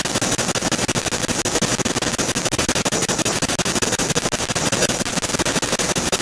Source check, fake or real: real